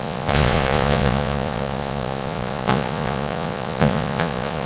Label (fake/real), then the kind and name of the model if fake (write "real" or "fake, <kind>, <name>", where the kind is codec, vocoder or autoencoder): fake, vocoder, Vocos